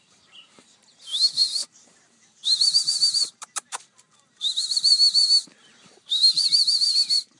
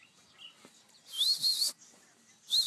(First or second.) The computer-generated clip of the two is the first